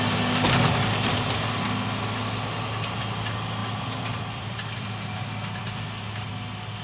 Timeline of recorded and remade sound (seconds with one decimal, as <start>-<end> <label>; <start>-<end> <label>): 0.0-3.6 recorded; 3.6-6.3 remade; 6.3-6.8 recorded